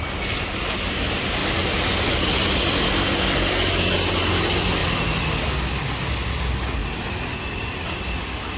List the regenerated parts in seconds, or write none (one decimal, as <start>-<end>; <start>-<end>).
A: none

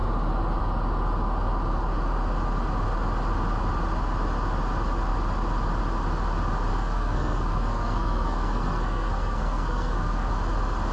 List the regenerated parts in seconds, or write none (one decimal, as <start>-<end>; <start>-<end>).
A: 6.7-10.3

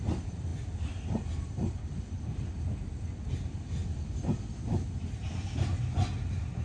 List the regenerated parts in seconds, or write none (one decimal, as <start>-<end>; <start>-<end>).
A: none

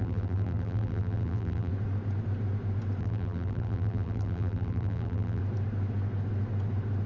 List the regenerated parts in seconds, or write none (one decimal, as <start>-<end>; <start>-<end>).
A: 0.0-1.7; 3.0-5.4

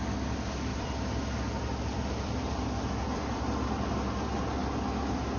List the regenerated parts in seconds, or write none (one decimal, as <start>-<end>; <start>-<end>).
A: 0.7-3.9